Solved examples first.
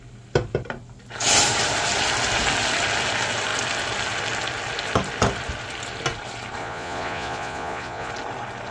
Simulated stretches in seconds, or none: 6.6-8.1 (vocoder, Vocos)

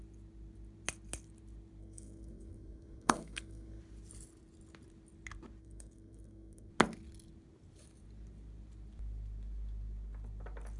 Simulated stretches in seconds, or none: 1.8-3.8 (codec, SNAC); 5.6-6.7

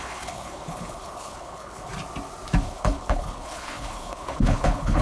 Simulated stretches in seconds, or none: 0.0-1.9 (codec, HILCodec); 2.6-5.0

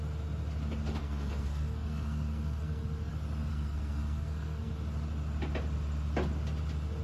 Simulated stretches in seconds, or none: 1.0-3.1 (codec, SNAC); 3.5-4.7

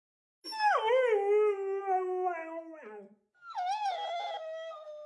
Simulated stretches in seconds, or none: none

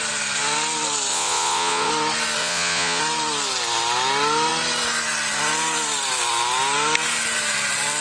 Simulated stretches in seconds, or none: 1.1-1.9 (vocoder, Vocos); 2.4-3.0

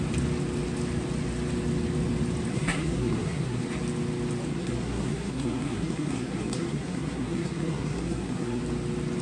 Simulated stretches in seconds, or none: 2.5-3.6 (codec, SNAC); 4.5-8.6

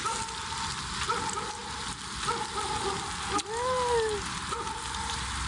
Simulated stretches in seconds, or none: none